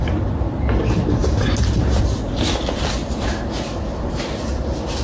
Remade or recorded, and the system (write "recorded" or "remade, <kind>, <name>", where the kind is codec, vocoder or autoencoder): recorded